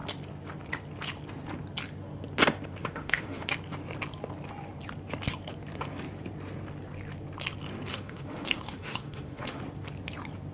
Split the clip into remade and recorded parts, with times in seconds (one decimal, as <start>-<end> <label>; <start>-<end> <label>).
0.0-2.8 recorded; 2.8-3.5 remade; 3.5-7.9 recorded; 7.9-9.6 remade; 9.6-10.5 recorded